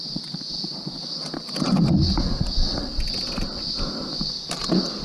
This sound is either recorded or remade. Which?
recorded